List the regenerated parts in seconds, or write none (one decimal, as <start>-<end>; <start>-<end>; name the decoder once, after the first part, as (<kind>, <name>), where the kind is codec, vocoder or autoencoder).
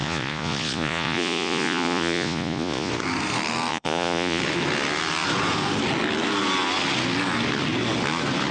0.0-2.9 (vocoder, Vocos); 3.7-4.4